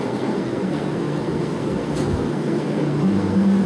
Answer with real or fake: fake